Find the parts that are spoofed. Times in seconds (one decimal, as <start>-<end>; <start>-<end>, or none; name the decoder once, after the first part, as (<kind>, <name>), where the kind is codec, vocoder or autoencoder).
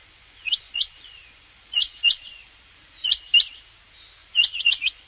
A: 0.0-3.1 (vocoder, Vocos); 4.2-5.1